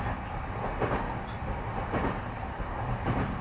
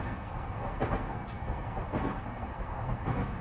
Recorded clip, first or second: first